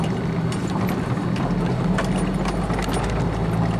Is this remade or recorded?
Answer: recorded